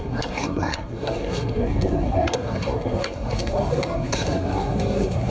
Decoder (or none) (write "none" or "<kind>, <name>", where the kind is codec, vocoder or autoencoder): codec, SNAC